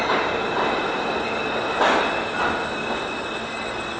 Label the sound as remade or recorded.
recorded